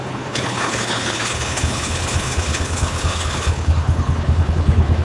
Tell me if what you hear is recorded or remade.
remade